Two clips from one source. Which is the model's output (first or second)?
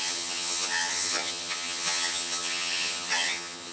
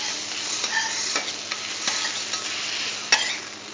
first